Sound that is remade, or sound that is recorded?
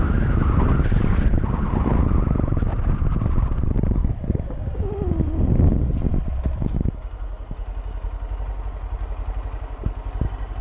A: recorded